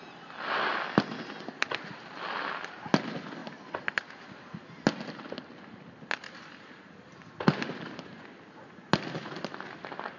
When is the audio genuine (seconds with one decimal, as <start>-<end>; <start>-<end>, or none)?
0.0-10.2